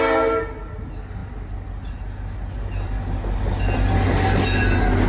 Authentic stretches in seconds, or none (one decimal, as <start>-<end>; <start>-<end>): 0.0-5.1